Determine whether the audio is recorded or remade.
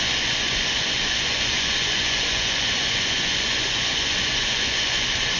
remade